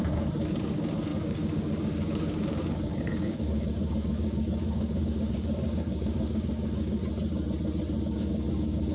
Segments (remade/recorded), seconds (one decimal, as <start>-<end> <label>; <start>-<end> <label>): 0.0-7.0 remade; 7.0-8.0 recorded; 8.0-8.9 remade